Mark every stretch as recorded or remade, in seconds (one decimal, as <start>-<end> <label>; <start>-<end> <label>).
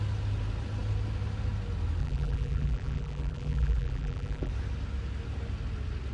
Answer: 0.0-2.0 recorded; 2.0-4.5 remade; 4.5-6.1 recorded